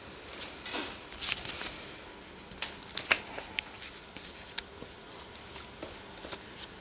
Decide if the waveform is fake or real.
real